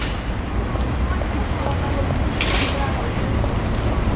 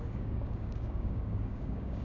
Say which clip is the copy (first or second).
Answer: second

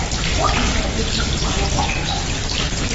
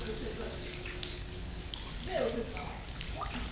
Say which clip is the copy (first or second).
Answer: second